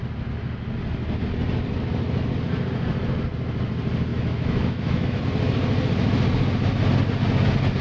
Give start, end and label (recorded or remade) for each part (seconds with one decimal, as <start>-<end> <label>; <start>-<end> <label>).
0.0-4.1 recorded; 4.1-5.2 remade; 5.2-7.8 recorded